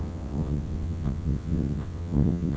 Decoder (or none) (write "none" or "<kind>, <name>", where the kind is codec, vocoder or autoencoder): vocoder, WaveNeXt